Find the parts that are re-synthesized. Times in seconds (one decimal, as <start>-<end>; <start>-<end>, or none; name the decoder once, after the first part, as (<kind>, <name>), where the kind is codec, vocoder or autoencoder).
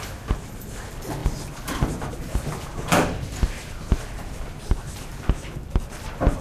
none